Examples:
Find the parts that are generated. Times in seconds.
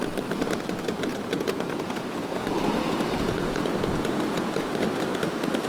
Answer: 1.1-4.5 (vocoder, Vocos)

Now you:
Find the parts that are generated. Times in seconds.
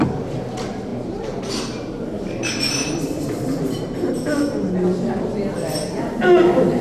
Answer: 0.9-4.7 (vocoder, BigVGAN v2)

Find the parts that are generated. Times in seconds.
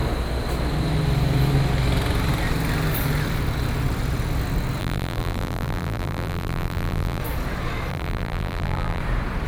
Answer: 4.8-7.2 (vocoder, BigVGAN v2); 7.9-9.0